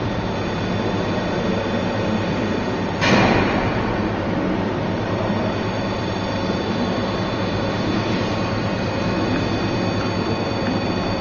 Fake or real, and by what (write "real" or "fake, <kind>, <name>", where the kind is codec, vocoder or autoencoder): fake, vocoder, BigVGAN v2